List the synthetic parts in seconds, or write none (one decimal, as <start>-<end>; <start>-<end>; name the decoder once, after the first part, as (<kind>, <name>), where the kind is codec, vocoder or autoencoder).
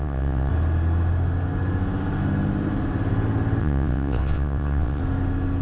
0.0-0.5 (vocoder, WaveNeXt); 3.6-5.0